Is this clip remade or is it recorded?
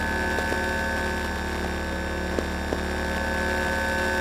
recorded